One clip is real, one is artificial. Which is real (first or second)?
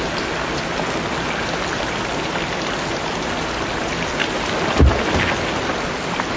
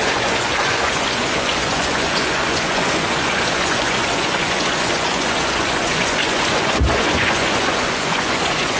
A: first